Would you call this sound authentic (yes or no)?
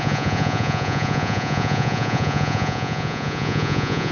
no